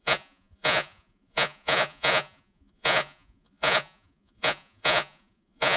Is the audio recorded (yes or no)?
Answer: no